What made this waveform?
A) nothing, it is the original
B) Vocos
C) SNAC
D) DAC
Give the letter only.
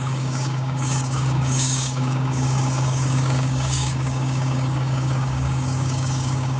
D